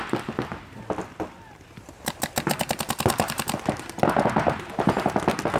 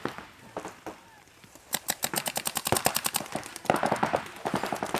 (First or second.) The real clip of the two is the first